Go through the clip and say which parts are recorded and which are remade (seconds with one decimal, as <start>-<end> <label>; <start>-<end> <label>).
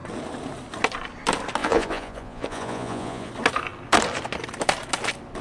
0.0-1.6 recorded; 1.6-3.3 remade; 3.3-5.4 recorded